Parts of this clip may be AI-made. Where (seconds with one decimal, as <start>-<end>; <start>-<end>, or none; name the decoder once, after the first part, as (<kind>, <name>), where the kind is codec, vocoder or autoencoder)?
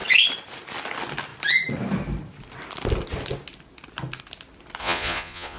4.8-5.6 (vocoder, Vocos)